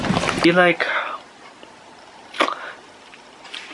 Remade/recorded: recorded